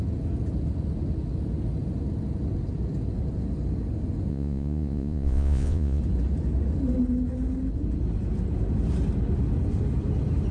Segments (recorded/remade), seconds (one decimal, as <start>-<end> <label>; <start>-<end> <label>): 0.0-4.3 recorded; 4.3-6.0 remade; 6.0-10.5 recorded